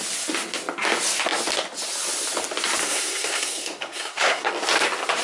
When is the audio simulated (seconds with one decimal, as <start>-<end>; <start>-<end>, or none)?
2.8-4.5